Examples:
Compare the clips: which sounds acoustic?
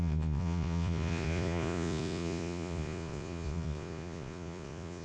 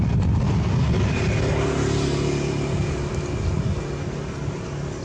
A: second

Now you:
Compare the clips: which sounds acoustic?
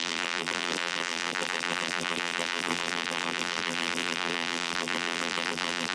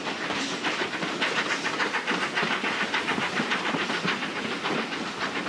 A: second